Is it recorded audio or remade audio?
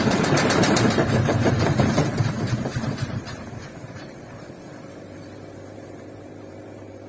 remade